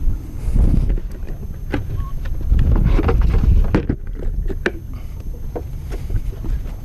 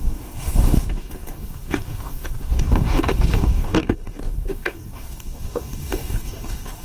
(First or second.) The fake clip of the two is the second